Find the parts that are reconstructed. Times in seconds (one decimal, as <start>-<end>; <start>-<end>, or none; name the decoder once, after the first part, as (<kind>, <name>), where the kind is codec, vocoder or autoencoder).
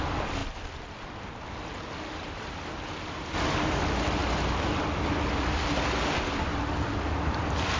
none